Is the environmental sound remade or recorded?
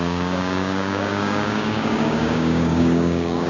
remade